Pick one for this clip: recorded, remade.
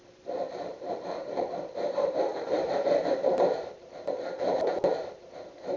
remade